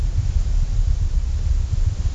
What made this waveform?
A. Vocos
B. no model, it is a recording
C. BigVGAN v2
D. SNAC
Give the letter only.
B